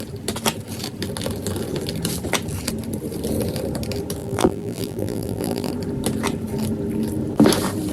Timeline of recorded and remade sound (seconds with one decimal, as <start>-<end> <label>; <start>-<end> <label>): 0.0-4.2 recorded; 4.2-5.7 remade; 5.7-7.9 recorded